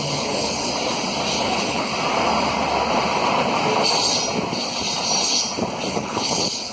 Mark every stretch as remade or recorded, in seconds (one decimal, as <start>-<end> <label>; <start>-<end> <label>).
0.0-0.7 remade; 0.7-1.3 recorded; 1.3-1.9 remade; 1.9-5.9 recorded; 5.9-6.7 remade